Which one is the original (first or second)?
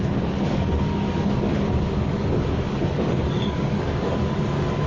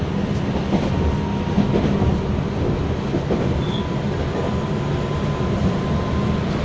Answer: second